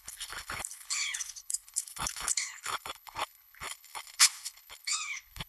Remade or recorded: remade